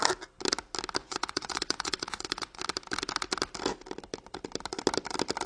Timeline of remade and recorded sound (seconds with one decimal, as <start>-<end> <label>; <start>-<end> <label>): 0.0-1.0 recorded; 1.0-2.6 remade; 2.6-5.5 recorded